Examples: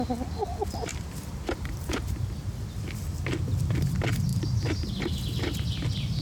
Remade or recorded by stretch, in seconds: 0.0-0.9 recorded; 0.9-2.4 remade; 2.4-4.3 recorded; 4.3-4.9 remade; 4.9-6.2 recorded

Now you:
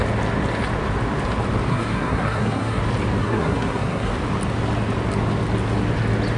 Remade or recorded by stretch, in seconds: 0.0-1.7 recorded; 1.7-2.8 remade; 2.8-3.2 recorded; 3.2-4.1 remade; 4.1-6.4 recorded

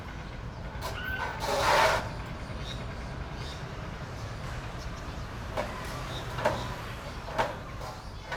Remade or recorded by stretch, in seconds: 0.0-3.5 recorded; 3.5-8.0 remade; 8.0-8.4 recorded

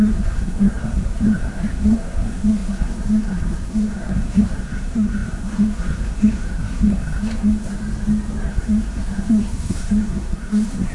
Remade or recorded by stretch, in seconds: 0.0-7.8 remade; 7.8-8.5 recorded; 8.5-10.9 remade

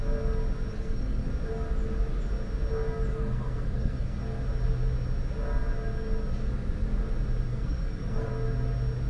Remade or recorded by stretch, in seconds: 0.0-0.7 recorded; 0.7-1.3 remade; 1.3-3.1 recorded; 3.1-4.2 remade; 4.2-7.5 recorded; 7.5-8.3 remade; 8.3-9.1 recorded

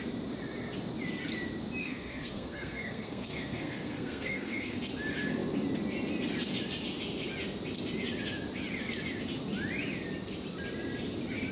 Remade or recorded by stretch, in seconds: 0.0-1.8 recorded; 1.8-4.8 remade; 4.8-11.5 recorded

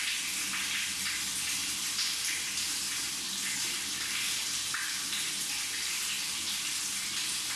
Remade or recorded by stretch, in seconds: 0.0-1.6 recorded; 1.6-2.5 remade; 2.5-4.4 recorded; 4.4-5.3 remade; 5.3-7.6 recorded